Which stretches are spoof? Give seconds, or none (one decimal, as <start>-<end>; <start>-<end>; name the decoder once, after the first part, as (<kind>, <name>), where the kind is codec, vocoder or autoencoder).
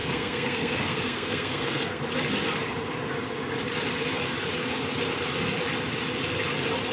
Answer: 0.0-2.0 (codec, SNAC)